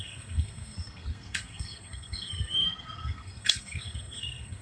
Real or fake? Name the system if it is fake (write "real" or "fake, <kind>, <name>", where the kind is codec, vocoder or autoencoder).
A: fake, codec, SNAC